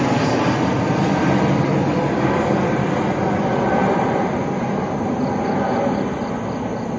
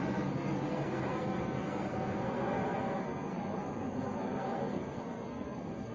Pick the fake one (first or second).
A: second